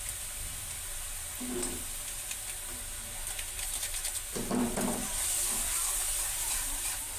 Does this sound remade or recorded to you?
recorded